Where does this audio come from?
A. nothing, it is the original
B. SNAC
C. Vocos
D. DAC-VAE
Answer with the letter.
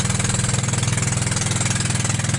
A